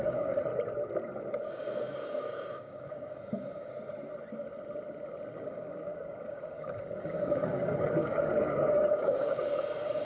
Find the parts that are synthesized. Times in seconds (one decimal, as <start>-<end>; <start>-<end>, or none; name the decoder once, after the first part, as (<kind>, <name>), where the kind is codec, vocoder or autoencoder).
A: 0.0-0.5 (codec, DAC); 1.5-3.7; 5.4-10.0